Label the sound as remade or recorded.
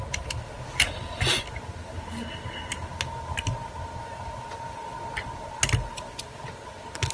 recorded